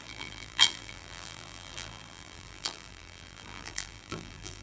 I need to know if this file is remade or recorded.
remade